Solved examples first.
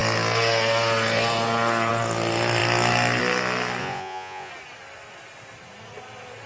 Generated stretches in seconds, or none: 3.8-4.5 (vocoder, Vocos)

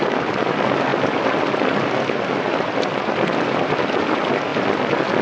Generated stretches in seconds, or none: none

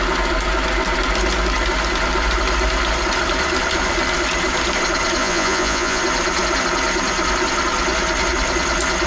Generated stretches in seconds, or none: 5.2-6.0 (vocoder, Vocos)

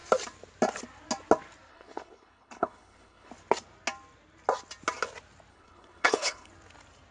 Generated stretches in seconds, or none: 1.7-3.3 (codec, HILCodec); 5.5-6.5

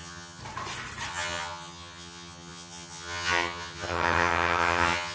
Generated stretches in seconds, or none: 0.0-0.4 (vocoder, HiFi-GAN); 1.1-5.1

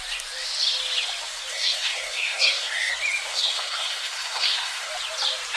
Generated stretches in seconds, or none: 1.5-2.9 (codec, SNAC); 3.3-4.9

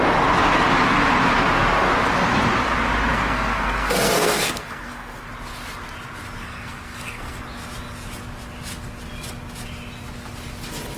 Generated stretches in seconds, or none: 3.1-5.3 (codec, SNAC); 6.4-7.4

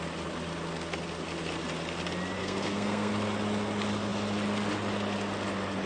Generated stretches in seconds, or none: 2.4-3.1 (codec, SNAC)